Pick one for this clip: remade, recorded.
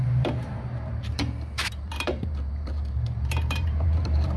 remade